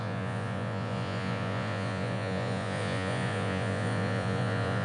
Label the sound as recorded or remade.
remade